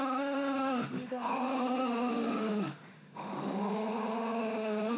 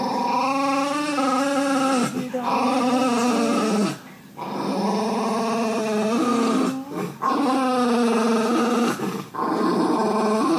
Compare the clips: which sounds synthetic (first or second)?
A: first